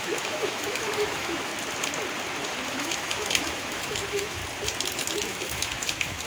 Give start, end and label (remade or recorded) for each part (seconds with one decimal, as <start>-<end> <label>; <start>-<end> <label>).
0.0-1.5 remade; 1.5-2.7 recorded; 2.7-4.4 remade; 4.4-5.1 recorded; 5.1-6.3 remade